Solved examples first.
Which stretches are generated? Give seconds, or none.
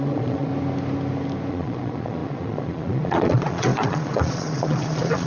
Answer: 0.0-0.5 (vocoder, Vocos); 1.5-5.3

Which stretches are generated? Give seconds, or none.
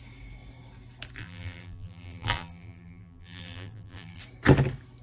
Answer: 1.2-4.2 (vocoder, BigVGAN v2)